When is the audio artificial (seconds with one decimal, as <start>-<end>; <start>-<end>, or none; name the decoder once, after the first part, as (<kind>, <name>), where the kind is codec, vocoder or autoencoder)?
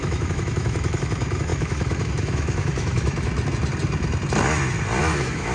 0.0-3.3 (autoencoder, DAC-VAE); 5.0-5.5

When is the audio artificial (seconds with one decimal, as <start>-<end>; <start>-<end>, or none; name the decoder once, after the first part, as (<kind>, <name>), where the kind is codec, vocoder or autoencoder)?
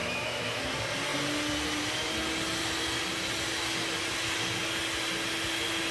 0.0-0.6 (autoencoder, DAC-VAE)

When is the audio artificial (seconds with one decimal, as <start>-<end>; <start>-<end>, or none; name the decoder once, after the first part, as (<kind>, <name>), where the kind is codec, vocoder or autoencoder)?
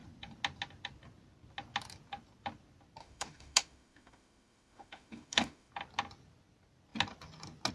3.0-5.7 (autoencoder, DAC-VAE)